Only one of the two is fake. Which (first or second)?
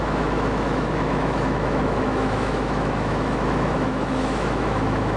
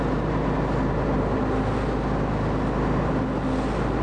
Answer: first